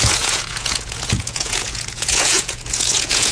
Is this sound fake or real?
fake